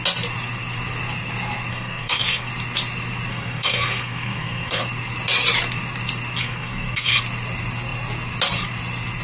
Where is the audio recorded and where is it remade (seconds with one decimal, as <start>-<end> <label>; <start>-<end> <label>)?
0.0-1.7 recorded; 1.7-2.5 remade; 2.5-3.3 recorded; 3.3-4.8 remade; 4.8-6.4 recorded; 6.4-7.2 remade; 7.2-9.2 recorded